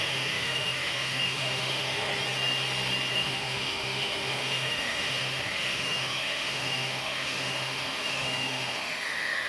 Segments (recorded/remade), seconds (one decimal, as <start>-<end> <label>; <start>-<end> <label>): 0.0-2.1 remade; 2.1-3.1 recorded; 3.1-9.5 remade